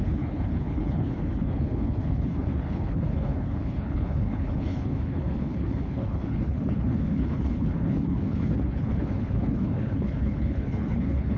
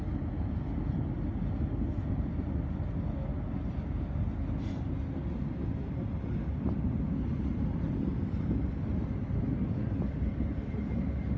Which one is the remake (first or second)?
first